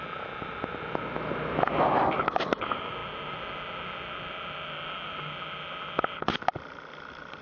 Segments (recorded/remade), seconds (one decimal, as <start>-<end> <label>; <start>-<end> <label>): 0.0-7.4 recorded

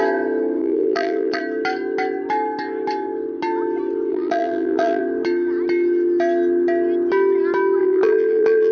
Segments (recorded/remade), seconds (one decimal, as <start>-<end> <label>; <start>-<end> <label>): 0.0-0.6 recorded; 0.6-1.4 remade; 1.4-4.1 recorded; 4.1-5.0 remade; 5.0-7.8 recorded; 7.8-8.7 remade

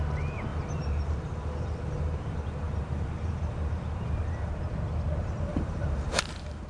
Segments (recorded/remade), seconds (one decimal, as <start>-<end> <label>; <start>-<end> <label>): 0.0-0.5 recorded; 0.5-4.5 remade; 4.5-5.5 recorded; 5.5-6.2 remade; 6.2-6.7 recorded

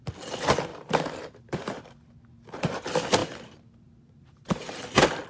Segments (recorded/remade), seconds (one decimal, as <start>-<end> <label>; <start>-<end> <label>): 0.0-0.7 recorded; 0.7-1.9 remade; 1.9-3.2 recorded; 3.2-4.8 remade; 4.8-5.3 recorded

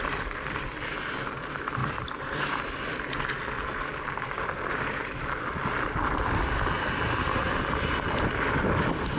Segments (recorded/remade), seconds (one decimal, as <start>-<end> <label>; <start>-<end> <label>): 0.0-1.8 recorded; 1.8-2.6 remade; 2.6-9.2 recorded

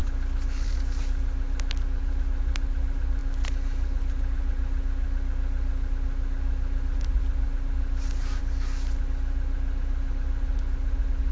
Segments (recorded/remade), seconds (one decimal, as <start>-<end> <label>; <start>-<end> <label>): 0.0-11.3 recorded